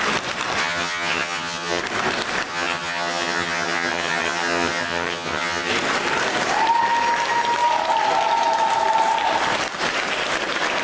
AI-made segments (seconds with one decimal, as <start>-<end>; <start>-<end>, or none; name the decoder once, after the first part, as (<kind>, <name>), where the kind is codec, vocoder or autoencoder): 0.6-1.8 (vocoder, HiFi-GAN); 2.5-5.7